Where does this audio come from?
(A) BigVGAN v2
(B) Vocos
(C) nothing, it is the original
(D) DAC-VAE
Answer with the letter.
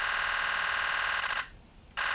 C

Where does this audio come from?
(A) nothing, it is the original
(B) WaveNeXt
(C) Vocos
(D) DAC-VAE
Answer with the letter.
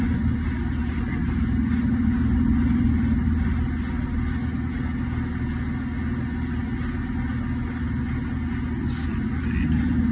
A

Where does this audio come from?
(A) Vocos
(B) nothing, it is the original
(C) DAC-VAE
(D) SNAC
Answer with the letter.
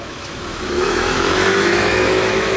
C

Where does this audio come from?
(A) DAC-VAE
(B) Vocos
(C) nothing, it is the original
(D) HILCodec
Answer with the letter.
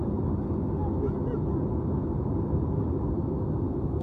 C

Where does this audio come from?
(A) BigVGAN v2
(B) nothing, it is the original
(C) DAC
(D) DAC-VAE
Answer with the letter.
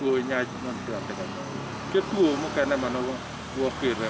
B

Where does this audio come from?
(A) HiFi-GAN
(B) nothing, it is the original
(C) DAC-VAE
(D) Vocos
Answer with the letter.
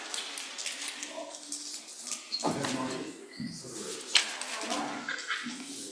B